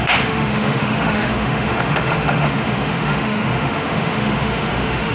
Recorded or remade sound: remade